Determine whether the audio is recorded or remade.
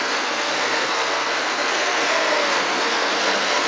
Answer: remade